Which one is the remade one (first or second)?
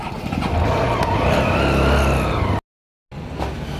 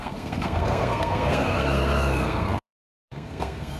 second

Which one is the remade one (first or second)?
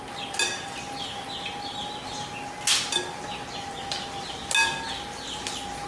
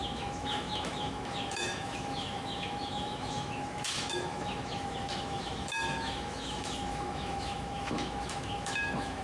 second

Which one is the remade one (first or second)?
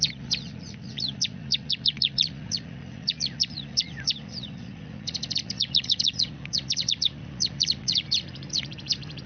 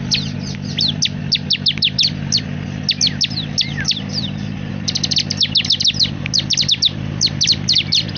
first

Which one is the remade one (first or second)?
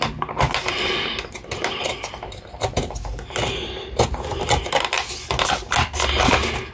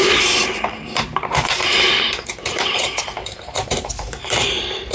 second